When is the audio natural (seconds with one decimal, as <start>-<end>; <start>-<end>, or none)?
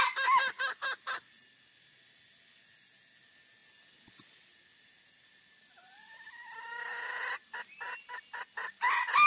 0.0-9.3